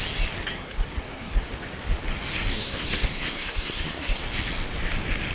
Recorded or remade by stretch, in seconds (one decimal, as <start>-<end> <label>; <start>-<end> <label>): 0.0-0.5 recorded; 0.5-1.5 remade; 1.5-2.5 recorded; 2.5-4.2 remade; 4.2-5.3 recorded